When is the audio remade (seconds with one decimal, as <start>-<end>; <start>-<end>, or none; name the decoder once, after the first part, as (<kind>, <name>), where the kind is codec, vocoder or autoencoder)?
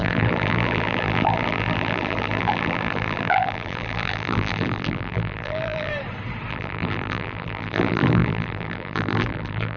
0.0-5.9 (vocoder, BigVGAN v2); 6.5-9.8